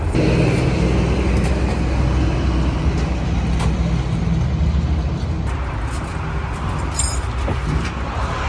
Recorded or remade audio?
recorded